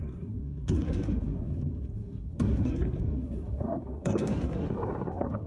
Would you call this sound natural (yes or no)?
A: no